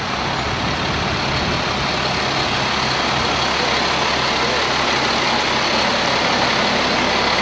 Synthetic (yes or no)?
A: no